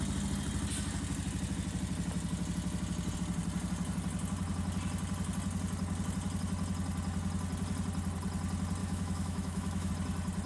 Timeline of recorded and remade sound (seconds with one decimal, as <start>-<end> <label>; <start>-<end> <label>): 0.0-8.8 recorded; 8.8-9.9 remade; 9.9-10.5 recorded